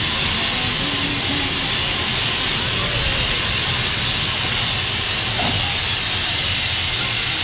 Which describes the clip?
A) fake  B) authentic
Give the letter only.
B